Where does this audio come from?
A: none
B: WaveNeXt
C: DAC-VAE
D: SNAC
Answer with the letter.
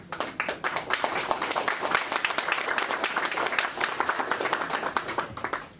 A